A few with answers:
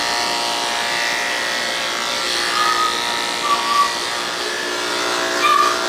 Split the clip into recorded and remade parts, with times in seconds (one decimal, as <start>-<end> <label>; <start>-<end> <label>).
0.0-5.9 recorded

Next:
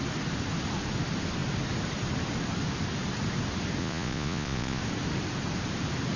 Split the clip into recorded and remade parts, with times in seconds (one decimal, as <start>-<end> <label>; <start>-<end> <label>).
0.0-3.8 recorded; 3.8-4.8 remade; 4.8-6.2 recorded

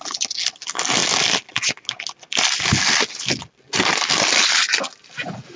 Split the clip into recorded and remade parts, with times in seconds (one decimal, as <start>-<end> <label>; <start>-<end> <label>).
0.0-5.6 recorded